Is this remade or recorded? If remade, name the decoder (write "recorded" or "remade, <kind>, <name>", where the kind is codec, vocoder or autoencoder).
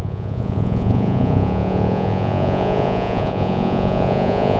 remade, vocoder, Vocos